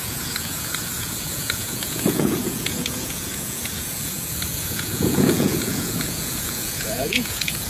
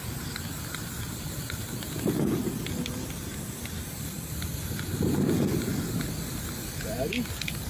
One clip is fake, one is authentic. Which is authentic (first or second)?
second